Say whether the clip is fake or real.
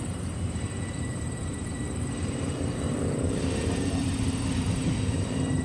fake